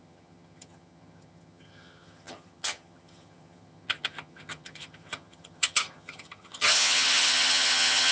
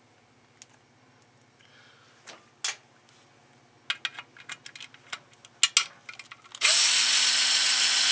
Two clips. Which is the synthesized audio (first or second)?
first